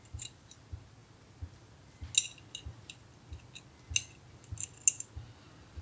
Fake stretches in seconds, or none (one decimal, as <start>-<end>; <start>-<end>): none